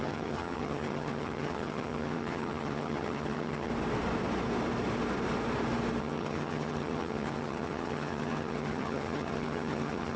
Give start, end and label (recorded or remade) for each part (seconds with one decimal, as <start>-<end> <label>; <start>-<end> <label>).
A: 0.0-3.7 remade; 3.7-6.0 recorded; 6.0-10.2 remade

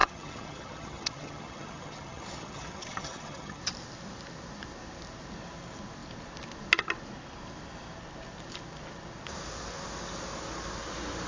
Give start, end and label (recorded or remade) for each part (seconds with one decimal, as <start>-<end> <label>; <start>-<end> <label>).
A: 0.0-3.6 remade; 3.6-11.3 recorded

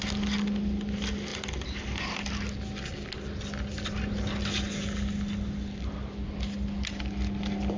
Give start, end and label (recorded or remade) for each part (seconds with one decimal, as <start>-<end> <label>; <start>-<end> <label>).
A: 0.0-7.8 recorded

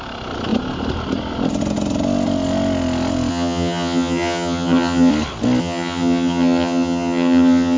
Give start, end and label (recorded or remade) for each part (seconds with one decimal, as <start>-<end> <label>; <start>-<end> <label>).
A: 0.0-3.3 recorded; 3.3-5.1 remade; 5.1-5.6 recorded; 5.6-7.8 remade

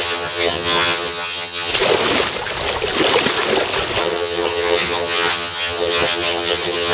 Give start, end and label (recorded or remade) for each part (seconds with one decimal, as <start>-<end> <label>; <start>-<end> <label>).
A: 0.0-1.7 remade; 1.7-4.0 recorded; 4.0-6.9 remade